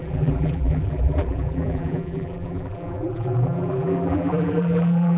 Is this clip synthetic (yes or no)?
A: yes